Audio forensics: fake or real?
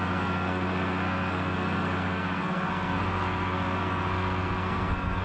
fake